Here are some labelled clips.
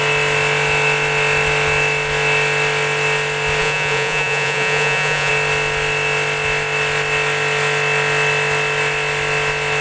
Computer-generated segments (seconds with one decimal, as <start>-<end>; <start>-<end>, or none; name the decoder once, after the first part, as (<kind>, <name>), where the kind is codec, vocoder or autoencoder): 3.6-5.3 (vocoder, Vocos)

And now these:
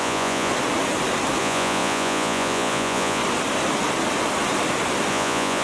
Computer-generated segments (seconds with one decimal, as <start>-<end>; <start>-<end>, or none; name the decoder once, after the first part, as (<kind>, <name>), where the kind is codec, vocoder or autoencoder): 0.0-0.5 (vocoder, Vocos); 1.4-3.2; 5.1-5.6

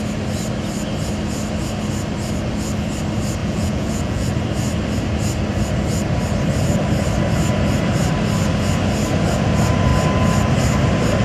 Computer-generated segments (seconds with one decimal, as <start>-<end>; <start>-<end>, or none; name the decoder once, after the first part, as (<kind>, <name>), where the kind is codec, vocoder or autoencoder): 3.4-4.3 (vocoder, Vocos)

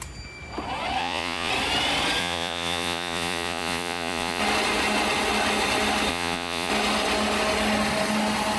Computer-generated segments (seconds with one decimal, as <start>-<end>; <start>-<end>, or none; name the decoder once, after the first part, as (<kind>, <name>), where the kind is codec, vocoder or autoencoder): 1.0-1.5 (vocoder, Vocos); 2.2-4.4; 6.1-6.7